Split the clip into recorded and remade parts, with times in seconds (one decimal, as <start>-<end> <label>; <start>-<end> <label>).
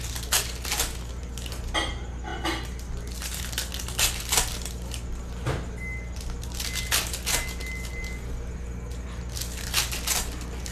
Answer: 0.0-10.7 recorded